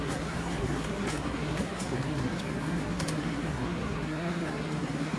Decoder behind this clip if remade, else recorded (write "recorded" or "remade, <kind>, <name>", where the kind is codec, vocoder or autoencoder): remade, codec, SNAC